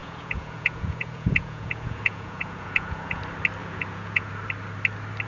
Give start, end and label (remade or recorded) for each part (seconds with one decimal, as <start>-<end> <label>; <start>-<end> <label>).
0.0-3.2 remade; 3.2-3.6 recorded; 3.6-4.3 remade; 4.3-5.3 recorded